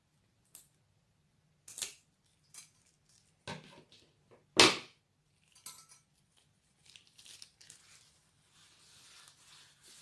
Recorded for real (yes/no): yes